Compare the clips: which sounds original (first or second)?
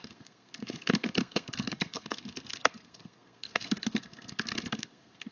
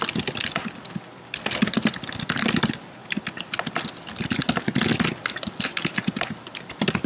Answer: second